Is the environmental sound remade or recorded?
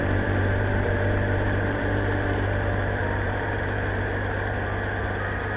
remade